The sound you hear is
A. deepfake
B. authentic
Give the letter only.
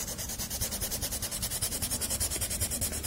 B